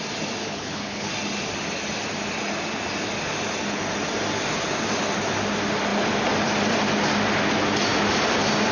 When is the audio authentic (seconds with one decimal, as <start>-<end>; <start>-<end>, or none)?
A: 0.0-0.4; 1.1-8.7